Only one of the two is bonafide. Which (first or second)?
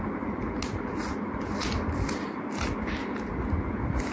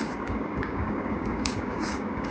first